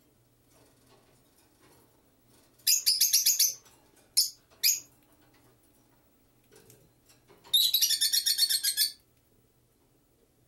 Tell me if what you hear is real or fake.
real